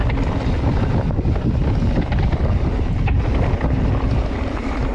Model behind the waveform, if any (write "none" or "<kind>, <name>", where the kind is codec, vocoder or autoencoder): none